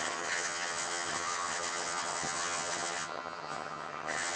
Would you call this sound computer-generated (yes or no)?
yes